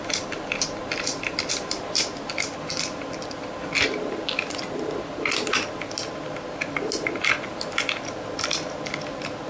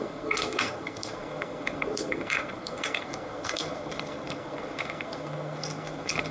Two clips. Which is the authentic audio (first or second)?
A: first